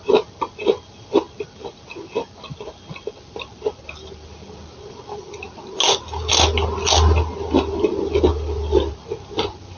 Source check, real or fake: real